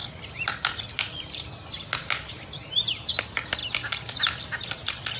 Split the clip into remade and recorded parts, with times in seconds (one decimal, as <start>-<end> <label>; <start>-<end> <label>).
0.0-5.2 recorded